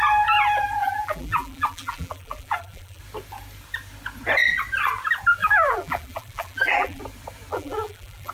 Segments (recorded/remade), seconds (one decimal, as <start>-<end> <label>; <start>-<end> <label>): 0.0-0.8 recorded; 0.8-3.0 remade; 3.0-5.4 recorded; 5.4-7.0 remade; 7.0-7.5 recorded; 7.5-8.3 remade